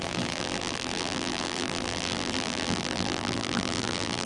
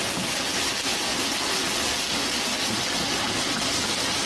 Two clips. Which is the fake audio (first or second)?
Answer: first